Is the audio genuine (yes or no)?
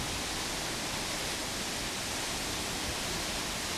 yes